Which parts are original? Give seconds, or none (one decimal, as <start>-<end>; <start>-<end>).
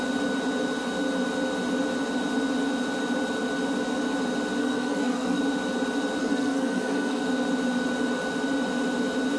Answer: 0.0-4.6; 5.4-6.2; 7.2-9.4